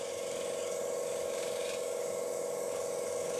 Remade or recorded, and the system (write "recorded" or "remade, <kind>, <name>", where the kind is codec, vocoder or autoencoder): remade, codec, DAC